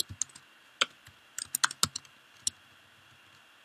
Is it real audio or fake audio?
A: real